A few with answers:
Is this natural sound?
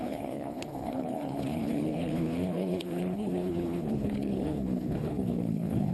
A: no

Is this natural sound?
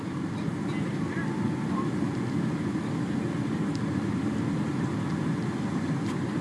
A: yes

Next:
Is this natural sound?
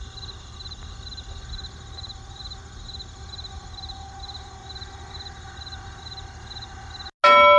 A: yes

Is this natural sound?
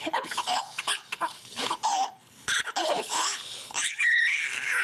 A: no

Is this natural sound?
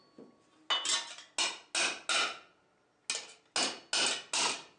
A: yes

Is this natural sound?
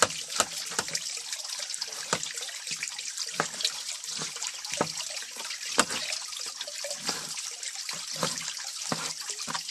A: yes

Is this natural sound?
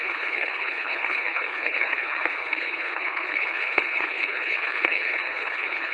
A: no